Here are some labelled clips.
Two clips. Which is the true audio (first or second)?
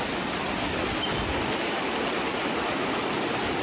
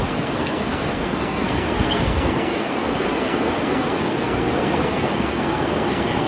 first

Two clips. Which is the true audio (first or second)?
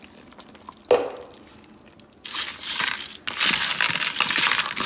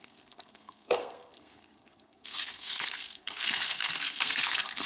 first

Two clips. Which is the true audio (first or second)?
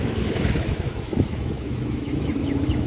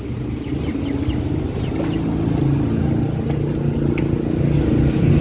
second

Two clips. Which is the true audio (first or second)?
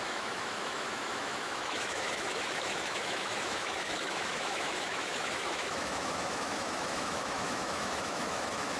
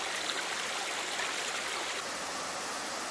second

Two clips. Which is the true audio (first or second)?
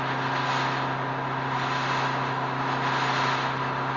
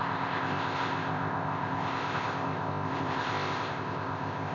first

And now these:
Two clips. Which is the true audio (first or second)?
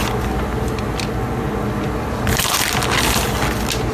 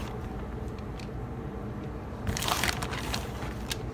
first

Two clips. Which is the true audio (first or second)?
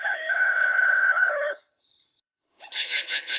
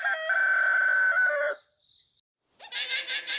second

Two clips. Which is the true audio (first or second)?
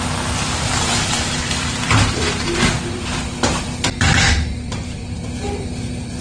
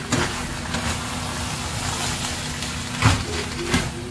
second